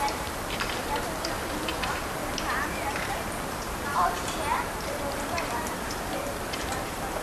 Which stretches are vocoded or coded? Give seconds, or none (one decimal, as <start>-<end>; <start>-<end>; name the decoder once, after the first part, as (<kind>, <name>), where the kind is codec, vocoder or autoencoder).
0.0-2.2 (vocoder, BigVGAN v2); 2.7-7.2